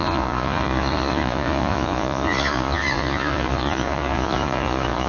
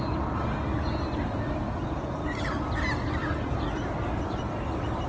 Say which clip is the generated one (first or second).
first